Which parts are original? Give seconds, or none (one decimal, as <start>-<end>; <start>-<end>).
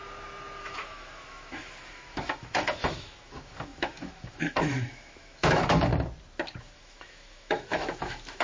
0.0-0.6; 5.9-6.6